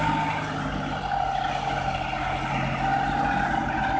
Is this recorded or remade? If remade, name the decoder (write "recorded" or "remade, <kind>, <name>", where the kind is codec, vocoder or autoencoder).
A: recorded